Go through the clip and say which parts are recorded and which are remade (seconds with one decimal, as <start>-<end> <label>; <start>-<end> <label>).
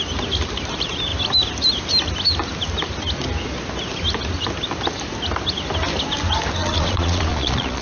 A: 0.0-6.6 recorded; 6.6-7.8 remade